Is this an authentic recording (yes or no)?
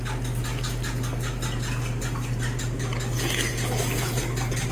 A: yes